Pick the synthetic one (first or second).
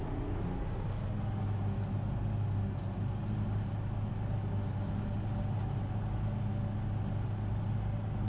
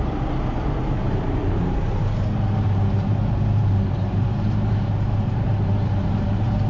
second